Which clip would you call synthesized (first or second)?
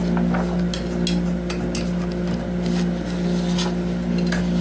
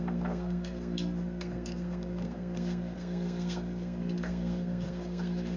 second